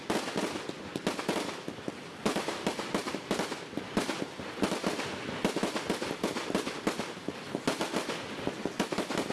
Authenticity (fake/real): real